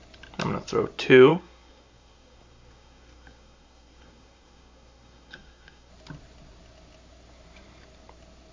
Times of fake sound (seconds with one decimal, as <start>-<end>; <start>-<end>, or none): 1.3-5.9